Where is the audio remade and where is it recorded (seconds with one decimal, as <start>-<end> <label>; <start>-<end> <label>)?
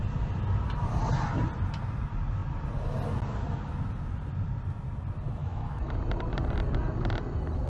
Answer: 0.0-5.4 recorded; 5.4-6.0 remade; 6.0-7.7 recorded